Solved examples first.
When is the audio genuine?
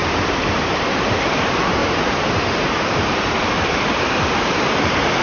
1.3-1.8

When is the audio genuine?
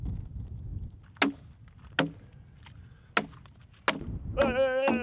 0.0-5.0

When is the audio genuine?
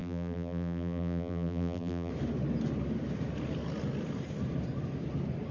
2.1-5.5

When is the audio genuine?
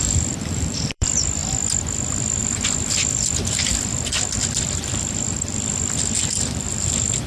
1.4-2.0; 3.7-5.0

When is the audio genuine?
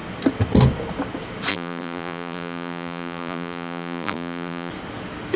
0.0-1.5; 4.7-5.4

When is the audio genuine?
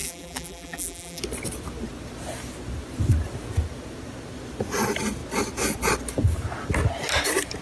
1.2-7.6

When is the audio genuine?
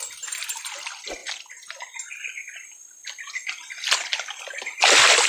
0.0-1.2; 4.4-5.3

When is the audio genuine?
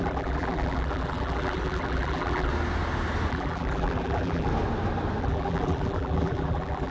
2.5-3.3; 4.5-5.2